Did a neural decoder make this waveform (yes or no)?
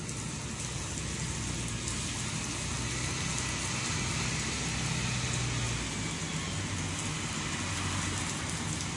no